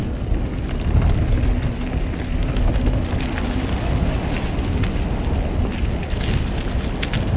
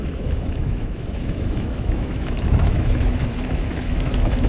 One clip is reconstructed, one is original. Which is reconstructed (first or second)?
second